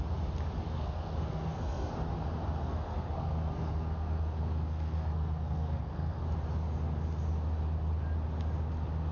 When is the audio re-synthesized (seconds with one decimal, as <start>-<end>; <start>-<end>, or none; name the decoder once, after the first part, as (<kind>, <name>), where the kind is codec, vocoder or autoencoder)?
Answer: 0.6-1.9 (codec, SNAC); 2.6-6.2